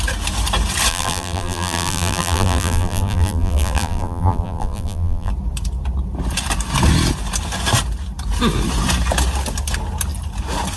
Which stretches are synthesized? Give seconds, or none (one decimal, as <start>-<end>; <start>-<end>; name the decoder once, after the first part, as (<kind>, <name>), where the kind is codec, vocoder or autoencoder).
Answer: 0.9-5.3 (vocoder, BigVGAN v2)